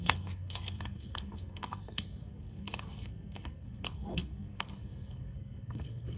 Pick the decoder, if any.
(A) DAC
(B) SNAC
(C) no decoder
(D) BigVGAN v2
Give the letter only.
B